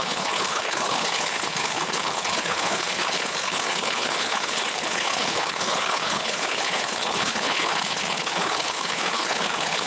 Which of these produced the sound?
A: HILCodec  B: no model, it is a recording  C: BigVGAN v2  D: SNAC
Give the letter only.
A